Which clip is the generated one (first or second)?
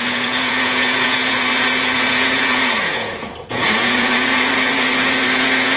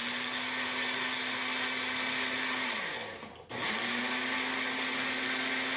first